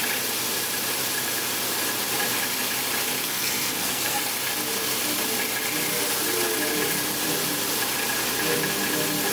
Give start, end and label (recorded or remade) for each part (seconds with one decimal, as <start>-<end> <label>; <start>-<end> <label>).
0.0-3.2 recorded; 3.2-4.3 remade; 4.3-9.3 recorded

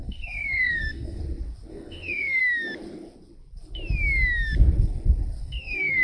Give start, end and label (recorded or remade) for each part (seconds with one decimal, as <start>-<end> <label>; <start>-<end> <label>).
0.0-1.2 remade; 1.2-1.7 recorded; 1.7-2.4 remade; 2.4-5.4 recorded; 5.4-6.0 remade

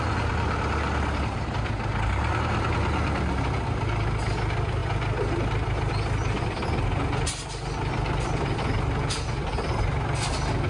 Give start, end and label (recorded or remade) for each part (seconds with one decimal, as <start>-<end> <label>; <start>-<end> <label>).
0.0-10.7 recorded